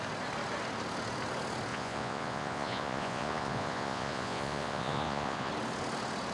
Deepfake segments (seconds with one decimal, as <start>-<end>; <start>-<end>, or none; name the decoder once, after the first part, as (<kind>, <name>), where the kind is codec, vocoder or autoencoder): 1.7-5.5 (vocoder, Vocos)